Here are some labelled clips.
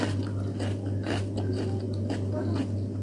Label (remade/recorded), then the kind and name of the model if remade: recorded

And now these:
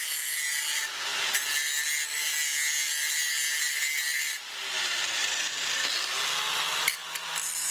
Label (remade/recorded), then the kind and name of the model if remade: recorded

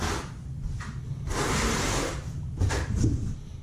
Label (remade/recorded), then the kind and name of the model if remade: recorded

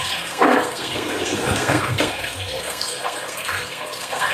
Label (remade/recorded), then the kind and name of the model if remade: remade, codec, SNAC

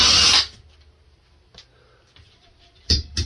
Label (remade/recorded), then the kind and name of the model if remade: recorded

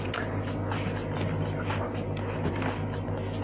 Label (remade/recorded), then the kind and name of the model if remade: recorded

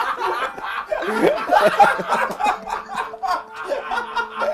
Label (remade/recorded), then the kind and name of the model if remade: recorded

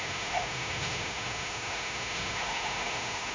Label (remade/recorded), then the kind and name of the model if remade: remade, autoencoder, DAC-VAE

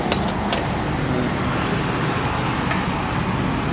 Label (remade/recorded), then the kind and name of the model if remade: recorded